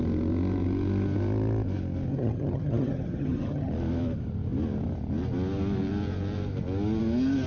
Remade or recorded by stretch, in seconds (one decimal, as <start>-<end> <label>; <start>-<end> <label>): 0.0-2.1 recorded; 2.1-3.7 remade; 3.7-7.5 recorded